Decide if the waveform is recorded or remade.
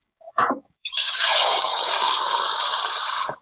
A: remade